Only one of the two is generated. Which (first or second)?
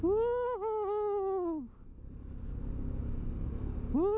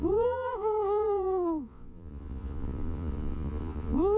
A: second